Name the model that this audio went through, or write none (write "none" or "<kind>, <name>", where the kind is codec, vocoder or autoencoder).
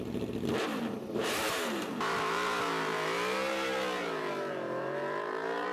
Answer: vocoder, BigVGAN v2